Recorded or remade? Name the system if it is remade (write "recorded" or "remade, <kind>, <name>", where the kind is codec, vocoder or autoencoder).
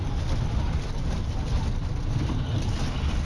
recorded